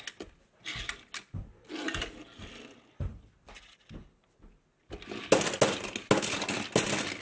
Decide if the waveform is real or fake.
real